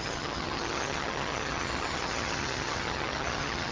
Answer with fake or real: fake